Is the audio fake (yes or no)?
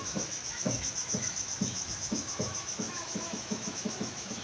yes